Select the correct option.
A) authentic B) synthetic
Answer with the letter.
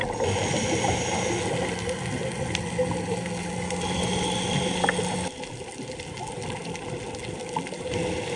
A